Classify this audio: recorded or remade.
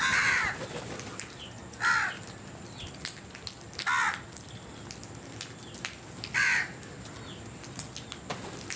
recorded